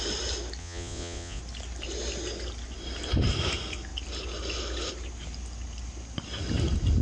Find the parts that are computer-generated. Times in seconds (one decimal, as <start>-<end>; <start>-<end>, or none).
0.6-1.4